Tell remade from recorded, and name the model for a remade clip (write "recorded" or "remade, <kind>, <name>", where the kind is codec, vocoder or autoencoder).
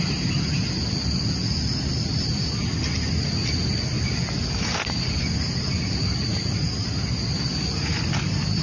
recorded